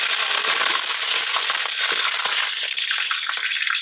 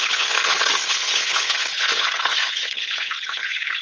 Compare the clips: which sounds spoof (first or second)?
second